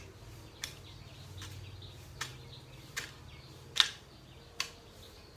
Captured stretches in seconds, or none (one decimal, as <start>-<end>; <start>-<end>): 0.0-5.4